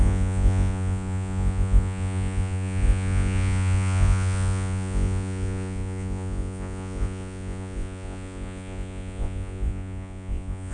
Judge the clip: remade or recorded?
remade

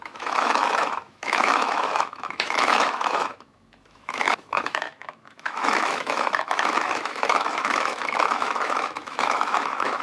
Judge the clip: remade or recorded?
remade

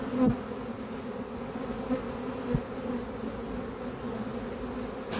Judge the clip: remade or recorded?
recorded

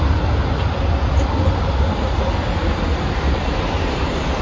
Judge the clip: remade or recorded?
recorded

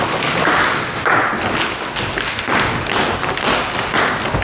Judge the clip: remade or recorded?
recorded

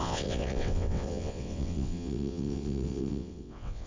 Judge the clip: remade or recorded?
remade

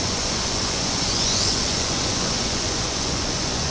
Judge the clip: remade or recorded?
remade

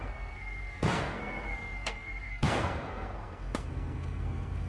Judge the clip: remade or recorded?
remade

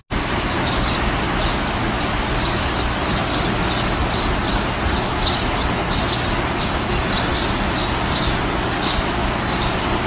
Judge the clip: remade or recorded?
recorded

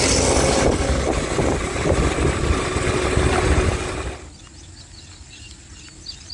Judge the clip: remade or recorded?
recorded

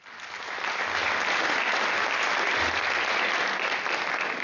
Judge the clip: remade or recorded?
recorded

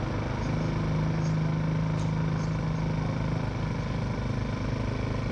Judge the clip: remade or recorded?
recorded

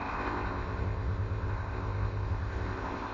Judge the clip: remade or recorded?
remade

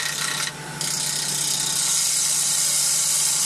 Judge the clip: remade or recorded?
recorded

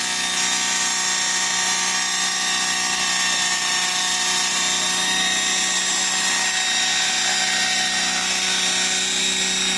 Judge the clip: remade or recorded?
recorded